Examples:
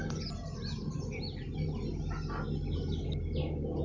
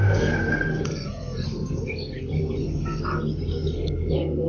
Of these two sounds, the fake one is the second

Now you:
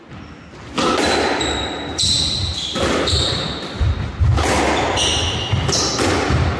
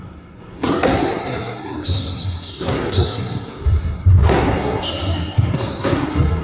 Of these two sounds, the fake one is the second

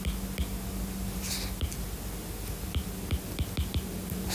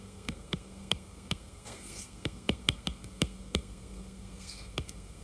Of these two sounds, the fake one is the second